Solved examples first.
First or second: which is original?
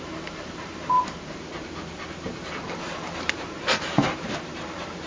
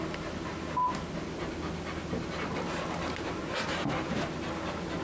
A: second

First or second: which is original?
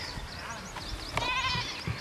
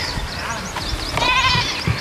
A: first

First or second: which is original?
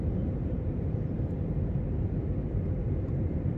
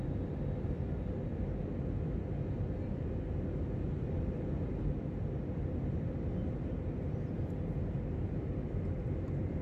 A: second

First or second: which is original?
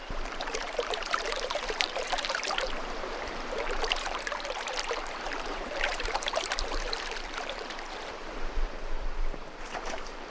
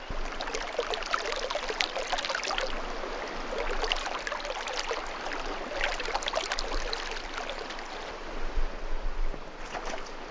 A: second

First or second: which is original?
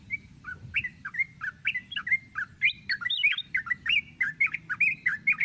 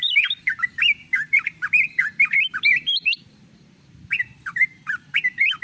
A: first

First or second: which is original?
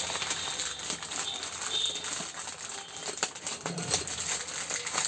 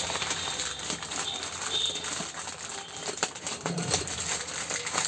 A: first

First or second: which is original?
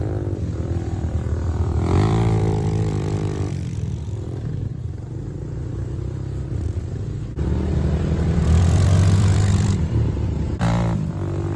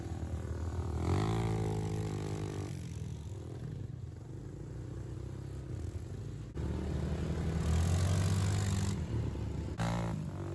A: second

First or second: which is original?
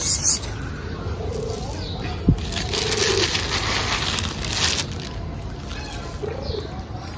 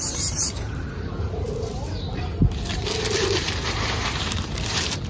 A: first